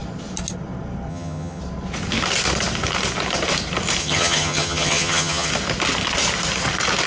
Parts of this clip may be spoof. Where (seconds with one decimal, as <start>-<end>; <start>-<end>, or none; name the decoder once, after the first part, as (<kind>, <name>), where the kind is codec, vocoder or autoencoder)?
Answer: 1.1-1.6 (vocoder, HiFi-GAN); 4.0-5.5